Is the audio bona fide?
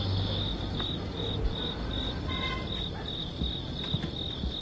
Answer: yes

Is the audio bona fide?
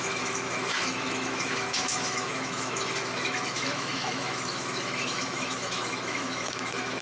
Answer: no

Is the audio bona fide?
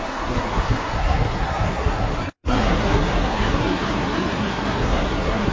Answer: no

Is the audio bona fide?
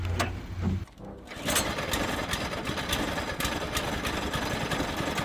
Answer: yes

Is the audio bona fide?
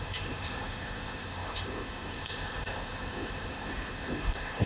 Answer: no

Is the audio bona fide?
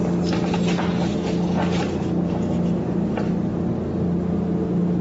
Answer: yes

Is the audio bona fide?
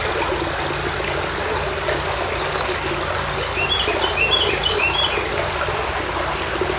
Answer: yes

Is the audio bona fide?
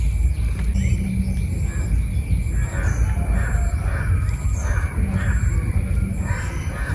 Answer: yes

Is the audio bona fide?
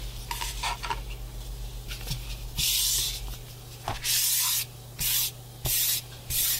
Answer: yes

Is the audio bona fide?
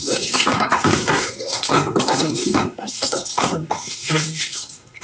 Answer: no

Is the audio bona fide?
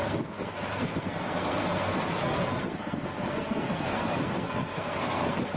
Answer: no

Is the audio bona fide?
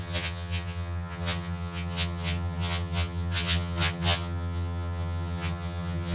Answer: no